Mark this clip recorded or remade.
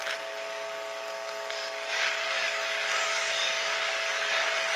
remade